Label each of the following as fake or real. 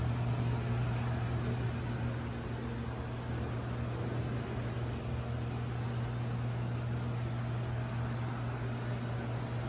real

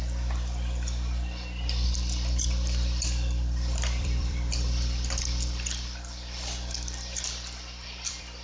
fake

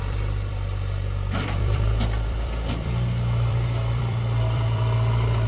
fake